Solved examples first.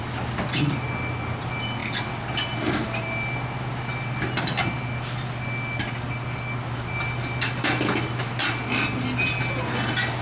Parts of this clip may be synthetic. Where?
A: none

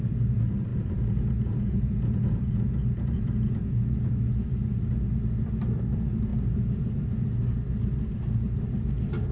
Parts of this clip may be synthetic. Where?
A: 0.7-4.3 (vocoder, Vocos); 6.3-6.9

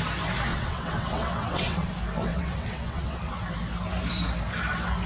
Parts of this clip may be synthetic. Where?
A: 0.5-1.9 (vocoder, WaveNeXt); 2.3-3.3

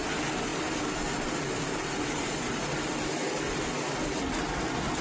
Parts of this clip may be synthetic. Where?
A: none